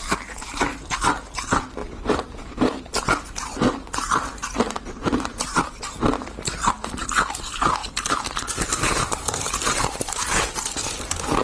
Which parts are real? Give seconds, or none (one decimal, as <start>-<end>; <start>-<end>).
0.0-1.8; 5.8-7.8; 10.3-11.4